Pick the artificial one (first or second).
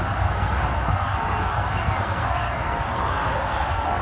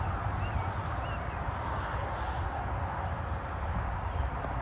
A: first